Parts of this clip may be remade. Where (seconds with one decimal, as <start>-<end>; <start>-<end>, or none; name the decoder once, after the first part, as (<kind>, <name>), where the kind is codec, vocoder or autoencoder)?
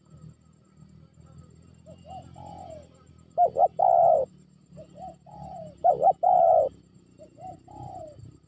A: 4.0-8.5 (vocoder, BigVGAN v2)